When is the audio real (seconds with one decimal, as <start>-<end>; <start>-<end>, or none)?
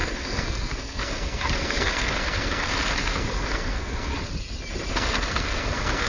4.1-4.9